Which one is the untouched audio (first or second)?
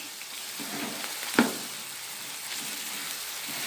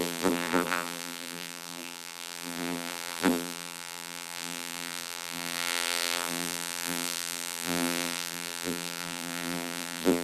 first